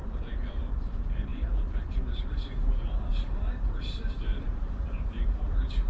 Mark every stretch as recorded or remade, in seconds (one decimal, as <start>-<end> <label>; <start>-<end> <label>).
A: 0.0-5.9 remade